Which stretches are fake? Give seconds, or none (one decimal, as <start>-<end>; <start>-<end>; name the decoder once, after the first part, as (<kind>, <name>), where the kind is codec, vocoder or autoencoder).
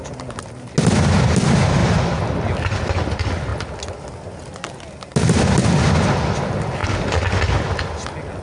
none